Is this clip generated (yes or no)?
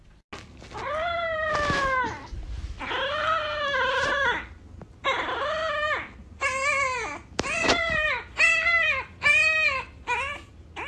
no